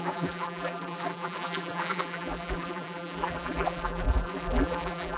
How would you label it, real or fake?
fake